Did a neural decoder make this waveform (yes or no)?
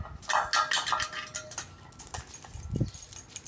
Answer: no